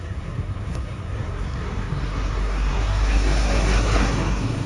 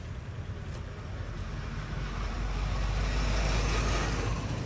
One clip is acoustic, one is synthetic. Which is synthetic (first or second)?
first